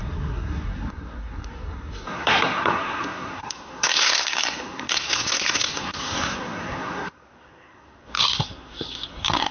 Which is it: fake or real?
fake